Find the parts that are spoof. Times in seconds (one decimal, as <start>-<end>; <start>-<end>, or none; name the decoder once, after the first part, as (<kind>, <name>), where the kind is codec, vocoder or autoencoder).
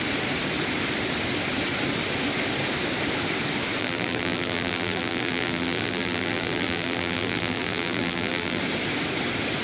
3.8-8.6 (vocoder, BigVGAN v2)